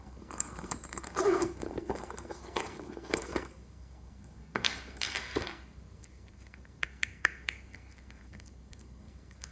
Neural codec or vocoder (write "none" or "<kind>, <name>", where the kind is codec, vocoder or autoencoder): codec, SNAC